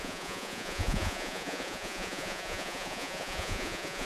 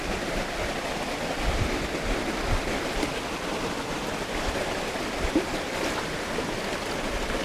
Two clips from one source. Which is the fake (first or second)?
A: first